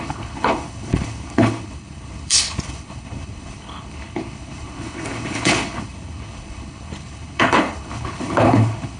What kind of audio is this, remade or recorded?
remade